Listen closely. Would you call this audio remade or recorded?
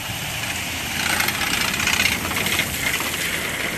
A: recorded